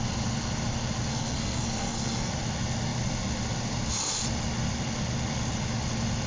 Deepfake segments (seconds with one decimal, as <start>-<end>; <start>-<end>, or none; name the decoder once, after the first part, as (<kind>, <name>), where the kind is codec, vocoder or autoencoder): 1.1-2.3 (codec, SNAC)